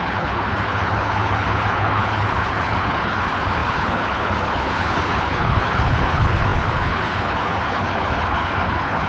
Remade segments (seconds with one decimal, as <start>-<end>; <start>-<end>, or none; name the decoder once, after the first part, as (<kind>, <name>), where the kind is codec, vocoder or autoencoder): 0.0-9.1 (codec, HILCodec)